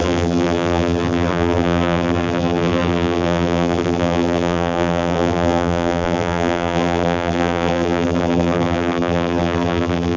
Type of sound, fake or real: fake